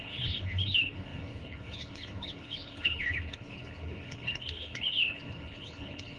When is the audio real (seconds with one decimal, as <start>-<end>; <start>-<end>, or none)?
none